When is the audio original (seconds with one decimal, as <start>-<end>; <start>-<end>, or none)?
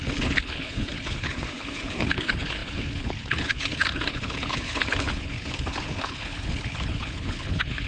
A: none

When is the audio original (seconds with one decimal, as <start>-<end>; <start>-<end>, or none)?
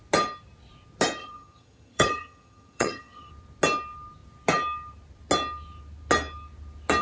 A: 0.0-1.2; 3.3-7.0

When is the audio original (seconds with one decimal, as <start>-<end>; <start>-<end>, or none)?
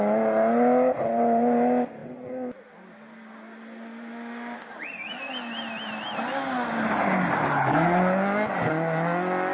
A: 0.0-9.5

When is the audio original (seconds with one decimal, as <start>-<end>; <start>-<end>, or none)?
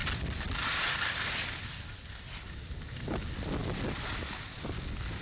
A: 0.0-5.2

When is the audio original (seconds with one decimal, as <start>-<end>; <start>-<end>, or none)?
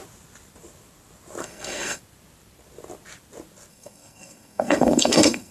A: 0.0-1.4; 2.0-3.7